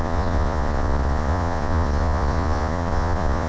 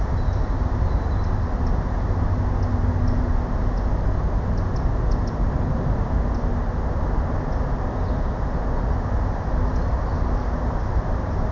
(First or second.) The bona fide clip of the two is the second